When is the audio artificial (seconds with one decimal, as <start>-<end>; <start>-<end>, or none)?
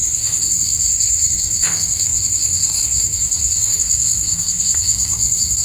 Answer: 0.0-5.6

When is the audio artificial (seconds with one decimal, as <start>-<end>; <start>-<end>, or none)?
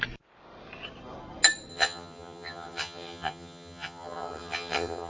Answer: 1.7-5.1